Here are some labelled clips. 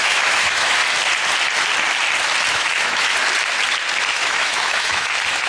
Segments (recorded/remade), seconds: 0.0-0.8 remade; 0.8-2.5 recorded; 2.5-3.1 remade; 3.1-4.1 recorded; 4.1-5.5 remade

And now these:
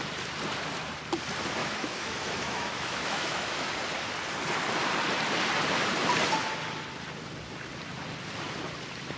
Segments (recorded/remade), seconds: 0.0-1.6 recorded; 1.6-3.7 remade; 3.7-9.2 recorded

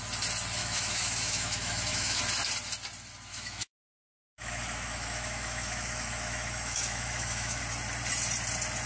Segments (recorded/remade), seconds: 0.0-0.6 recorded; 0.6-2.2 remade; 2.2-3.3 recorded; 3.3-7.6 remade; 7.6-8.9 recorded

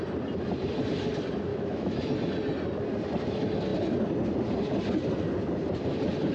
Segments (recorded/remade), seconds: 0.0-1.5 recorded; 1.5-2.1 remade; 2.1-6.3 recorded

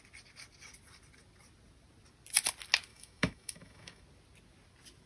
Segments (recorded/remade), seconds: 0.0-2.9 recorded; 2.9-4.0 remade; 4.0-5.1 recorded

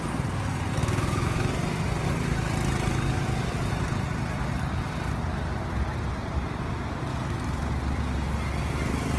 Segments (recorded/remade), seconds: 0.0-0.7 recorded; 0.7-1.5 remade; 1.5-7.1 recorded; 7.1-7.7 remade; 7.7-9.2 recorded

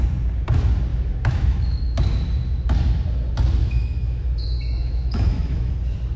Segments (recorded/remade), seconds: 0.0-0.9 recorded; 0.9-1.8 remade; 1.8-3.6 recorded; 3.6-5.7 remade; 5.7-6.2 recorded

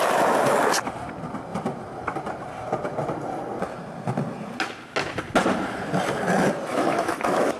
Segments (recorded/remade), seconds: 0.0-6.7 recorded; 6.7-7.6 remade